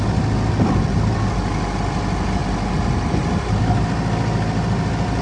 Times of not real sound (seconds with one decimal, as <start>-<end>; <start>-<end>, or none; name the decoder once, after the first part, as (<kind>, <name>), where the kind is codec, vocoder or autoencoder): none